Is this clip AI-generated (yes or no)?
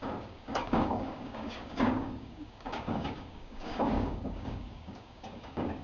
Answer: yes